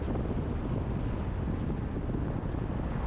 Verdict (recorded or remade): recorded